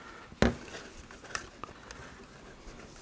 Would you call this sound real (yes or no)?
yes